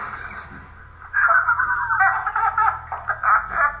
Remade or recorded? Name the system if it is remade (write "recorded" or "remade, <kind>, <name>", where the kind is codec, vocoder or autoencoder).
recorded